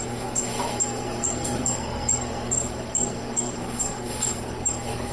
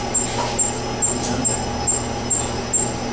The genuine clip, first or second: second